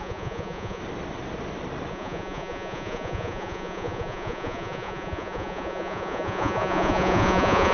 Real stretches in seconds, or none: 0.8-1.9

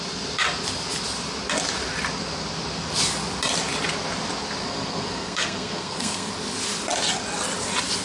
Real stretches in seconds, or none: 0.0-4.6; 6.3-8.0

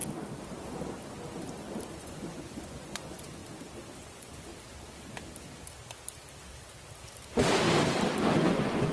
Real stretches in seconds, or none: 0.0-1.9; 3.4-4.0; 4.5-8.2

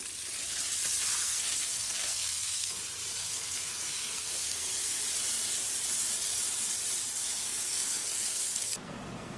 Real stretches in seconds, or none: 0.0-1.2; 2.8-3.2; 5.0-7.2